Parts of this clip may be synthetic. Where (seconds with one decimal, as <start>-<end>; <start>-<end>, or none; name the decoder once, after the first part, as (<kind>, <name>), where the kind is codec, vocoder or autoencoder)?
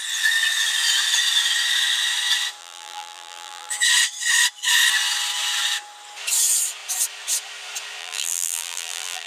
2.6-3.7 (vocoder, BigVGAN v2); 8.0-9.3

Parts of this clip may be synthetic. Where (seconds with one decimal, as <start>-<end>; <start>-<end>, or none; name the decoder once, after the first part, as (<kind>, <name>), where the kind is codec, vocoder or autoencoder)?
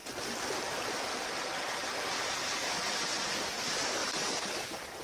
none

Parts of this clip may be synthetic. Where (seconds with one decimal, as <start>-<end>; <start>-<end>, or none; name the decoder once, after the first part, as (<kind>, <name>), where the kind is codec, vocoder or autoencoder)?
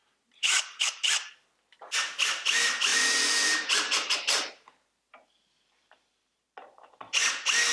0.0-1.5 (vocoder, BigVGAN v2); 2.9-7.0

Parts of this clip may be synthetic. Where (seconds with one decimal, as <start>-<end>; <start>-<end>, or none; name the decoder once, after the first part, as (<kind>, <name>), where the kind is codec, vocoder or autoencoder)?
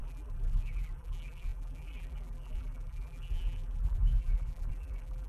0.0-5.3 (vocoder, BigVGAN v2)